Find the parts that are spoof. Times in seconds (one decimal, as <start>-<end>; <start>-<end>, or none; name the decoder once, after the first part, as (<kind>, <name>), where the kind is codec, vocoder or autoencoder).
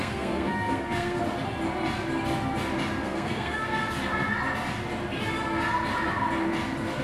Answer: 0.0-1.2 (codec, SNAC); 3.0-3.9